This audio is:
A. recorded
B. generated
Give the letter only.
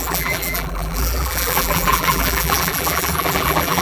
B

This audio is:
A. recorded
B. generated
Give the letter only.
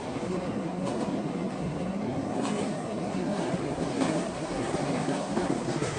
B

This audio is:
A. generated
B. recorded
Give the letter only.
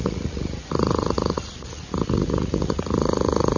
A